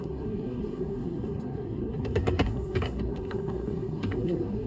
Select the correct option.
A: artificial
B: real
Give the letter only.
A